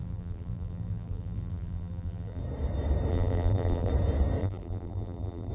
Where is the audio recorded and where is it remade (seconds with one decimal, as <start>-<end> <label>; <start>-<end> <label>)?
0.0-2.4 remade; 2.4-3.1 recorded; 3.1-3.9 remade; 3.9-4.4 recorded; 4.4-5.5 remade